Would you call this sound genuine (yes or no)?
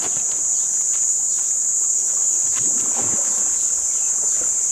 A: yes